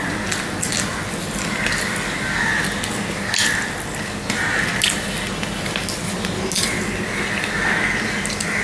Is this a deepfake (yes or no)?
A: no